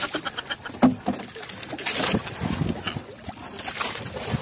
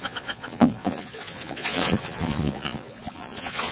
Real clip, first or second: first